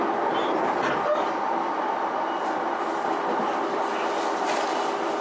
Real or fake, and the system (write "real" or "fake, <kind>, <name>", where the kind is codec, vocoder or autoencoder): real